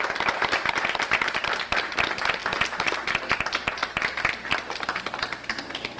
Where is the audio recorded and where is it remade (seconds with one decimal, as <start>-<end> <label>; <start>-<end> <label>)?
0.0-6.0 recorded